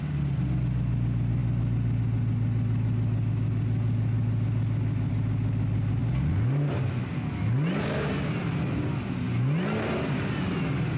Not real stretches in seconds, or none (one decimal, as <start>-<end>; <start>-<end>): none